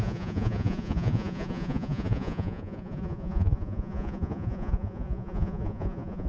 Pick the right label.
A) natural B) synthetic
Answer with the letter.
B